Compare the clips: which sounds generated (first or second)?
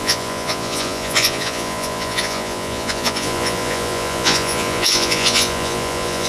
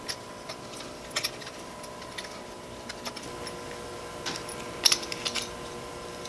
first